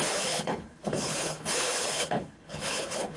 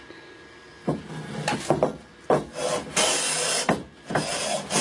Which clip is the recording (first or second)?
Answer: second